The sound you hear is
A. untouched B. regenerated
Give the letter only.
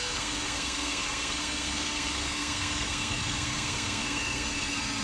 B